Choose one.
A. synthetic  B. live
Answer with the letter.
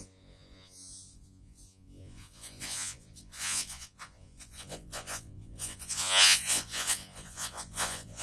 A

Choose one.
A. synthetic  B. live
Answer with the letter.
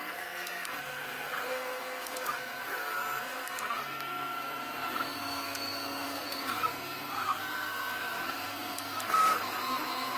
A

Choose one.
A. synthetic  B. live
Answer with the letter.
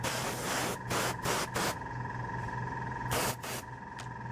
B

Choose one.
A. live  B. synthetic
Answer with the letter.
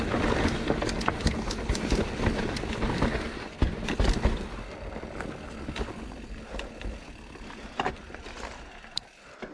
A